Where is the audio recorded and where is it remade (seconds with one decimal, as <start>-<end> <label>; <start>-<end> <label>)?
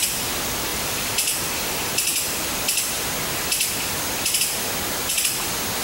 0.0-0.7 recorded; 0.7-1.4 remade; 1.4-5.8 recorded